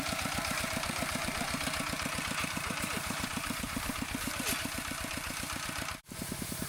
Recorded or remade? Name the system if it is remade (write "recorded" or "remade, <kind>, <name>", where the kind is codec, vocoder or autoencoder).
remade, vocoder, BigVGAN v2